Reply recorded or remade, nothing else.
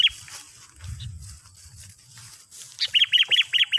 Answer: recorded